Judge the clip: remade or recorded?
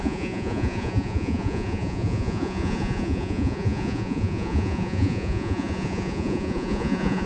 remade